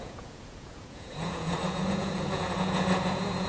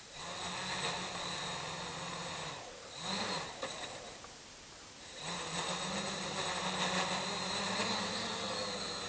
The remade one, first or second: first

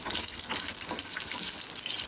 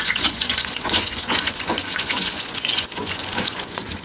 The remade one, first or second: second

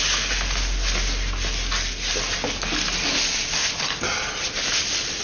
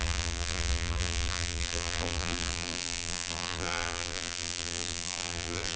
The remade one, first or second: second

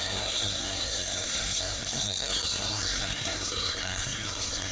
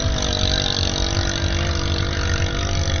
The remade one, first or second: first